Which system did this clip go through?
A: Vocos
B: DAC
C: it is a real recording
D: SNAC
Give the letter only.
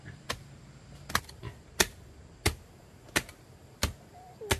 C